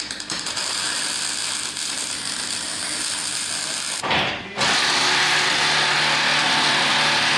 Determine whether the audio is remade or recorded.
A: recorded